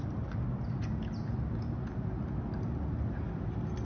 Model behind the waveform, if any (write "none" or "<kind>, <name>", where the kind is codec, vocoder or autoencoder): none